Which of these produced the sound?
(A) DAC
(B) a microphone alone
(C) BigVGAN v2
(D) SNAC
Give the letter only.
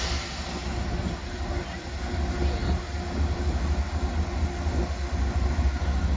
B